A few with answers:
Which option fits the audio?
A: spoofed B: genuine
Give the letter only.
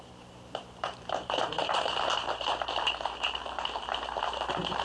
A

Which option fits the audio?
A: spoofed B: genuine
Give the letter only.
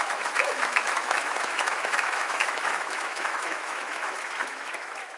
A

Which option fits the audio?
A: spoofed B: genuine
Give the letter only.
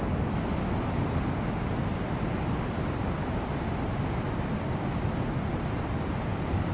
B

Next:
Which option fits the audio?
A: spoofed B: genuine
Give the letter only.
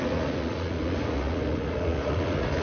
A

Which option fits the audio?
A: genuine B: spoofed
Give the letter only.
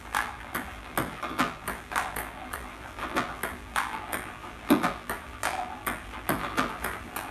B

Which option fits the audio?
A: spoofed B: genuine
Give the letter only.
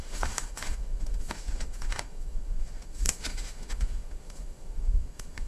A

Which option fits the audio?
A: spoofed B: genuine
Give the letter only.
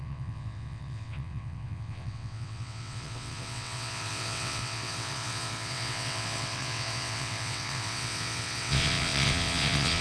A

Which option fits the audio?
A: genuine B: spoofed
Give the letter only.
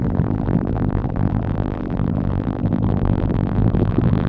B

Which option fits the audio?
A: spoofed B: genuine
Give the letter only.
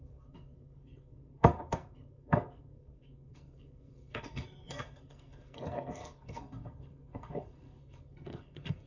A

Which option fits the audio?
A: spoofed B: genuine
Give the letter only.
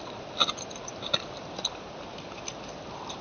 B